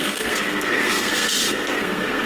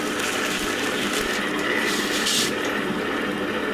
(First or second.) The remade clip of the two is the first